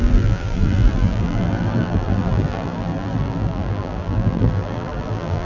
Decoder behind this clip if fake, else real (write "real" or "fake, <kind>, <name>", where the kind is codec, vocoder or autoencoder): fake, vocoder, BigVGAN v2